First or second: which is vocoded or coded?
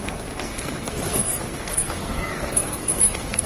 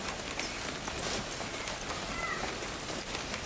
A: first